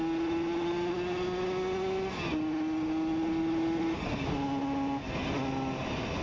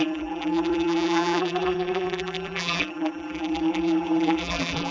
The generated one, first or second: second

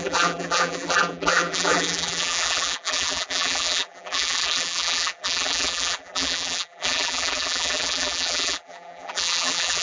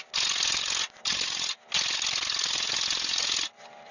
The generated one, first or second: first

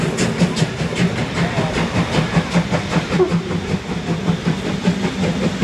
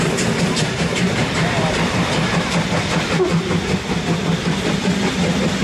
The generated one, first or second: second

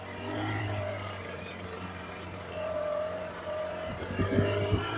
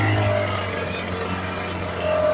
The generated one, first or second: first